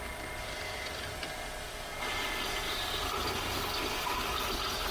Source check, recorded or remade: remade